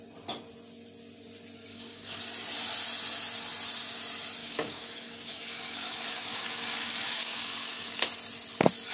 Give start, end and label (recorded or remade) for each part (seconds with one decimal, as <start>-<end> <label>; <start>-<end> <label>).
0.0-1.7 recorded; 1.7-2.2 remade; 2.2-4.4 recorded; 4.4-8.0 remade; 8.0-8.9 recorded